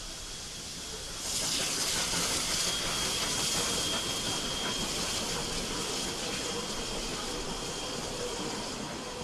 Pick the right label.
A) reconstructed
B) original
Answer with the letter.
B